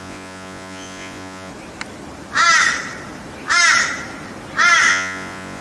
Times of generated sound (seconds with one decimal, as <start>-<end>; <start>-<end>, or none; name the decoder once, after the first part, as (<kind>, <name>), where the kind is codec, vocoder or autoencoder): 0.0-1.5 (vocoder, Vocos); 4.9-5.6